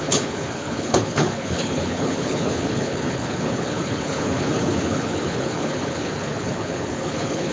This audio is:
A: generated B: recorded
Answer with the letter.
A